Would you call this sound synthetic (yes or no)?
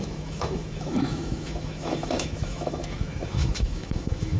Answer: yes